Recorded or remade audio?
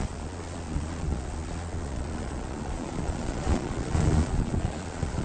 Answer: remade